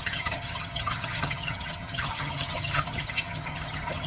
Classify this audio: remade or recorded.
remade